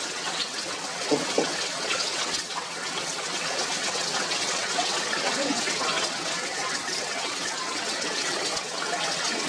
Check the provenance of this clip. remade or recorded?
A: remade